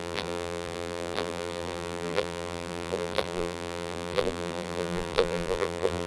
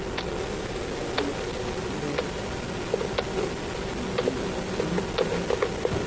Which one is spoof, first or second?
first